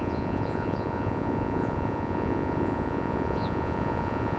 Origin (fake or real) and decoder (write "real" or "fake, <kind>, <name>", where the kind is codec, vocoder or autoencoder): fake, vocoder, Vocos